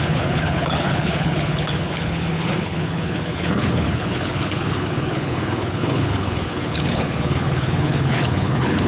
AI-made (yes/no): yes